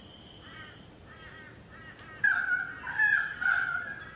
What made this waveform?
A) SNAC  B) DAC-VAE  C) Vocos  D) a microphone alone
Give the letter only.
D